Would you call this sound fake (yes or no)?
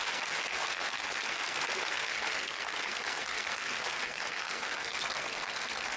yes